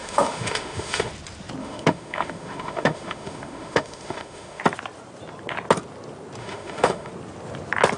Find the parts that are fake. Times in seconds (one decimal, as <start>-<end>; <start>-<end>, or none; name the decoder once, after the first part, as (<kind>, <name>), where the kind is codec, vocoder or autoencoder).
0.0-1.1 (autoencoder, DAC-VAE); 1.6-4.6; 6.4-7.1